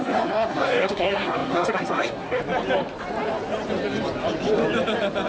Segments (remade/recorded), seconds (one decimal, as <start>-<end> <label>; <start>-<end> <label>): 0.0-2.4 remade; 2.4-5.3 recorded